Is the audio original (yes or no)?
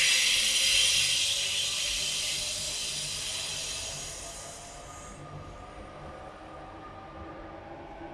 yes